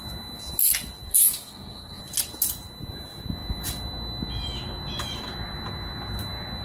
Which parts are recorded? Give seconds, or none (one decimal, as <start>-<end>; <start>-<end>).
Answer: 0.0-1.1; 2.0-6.6